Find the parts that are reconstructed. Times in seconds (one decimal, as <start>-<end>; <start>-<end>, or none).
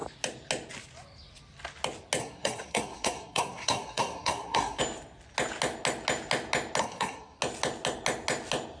2.2-4.8; 6.8-7.4